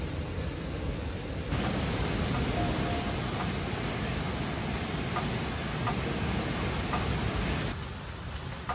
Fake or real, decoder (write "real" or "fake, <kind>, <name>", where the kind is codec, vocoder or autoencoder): real